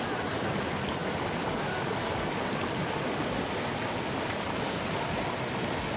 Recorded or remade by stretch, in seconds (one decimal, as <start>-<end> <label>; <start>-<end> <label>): 0.0-6.0 recorded